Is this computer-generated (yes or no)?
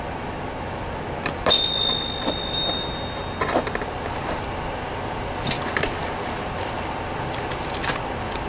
no